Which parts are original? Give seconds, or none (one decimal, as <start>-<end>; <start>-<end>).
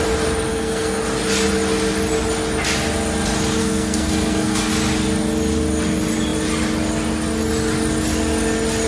0.0-0.5; 1.0-3.6; 4.7-8.9